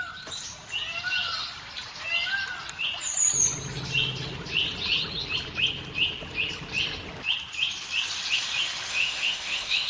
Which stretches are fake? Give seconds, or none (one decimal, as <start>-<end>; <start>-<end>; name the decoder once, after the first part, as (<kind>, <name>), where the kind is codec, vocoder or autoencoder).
8.9-9.9 (autoencoder, DAC-VAE)